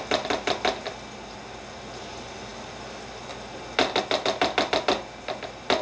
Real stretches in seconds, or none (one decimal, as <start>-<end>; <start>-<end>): 0.0-5.8